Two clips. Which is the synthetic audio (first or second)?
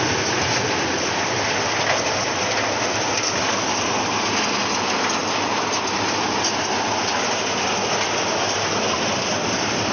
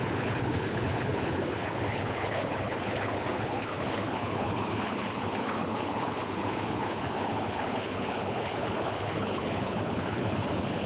second